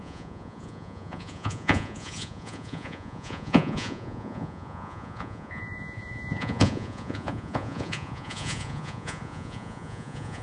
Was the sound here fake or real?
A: fake